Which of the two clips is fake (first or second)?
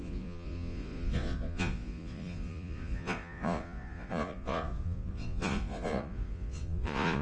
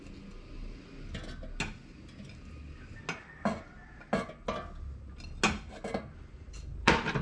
first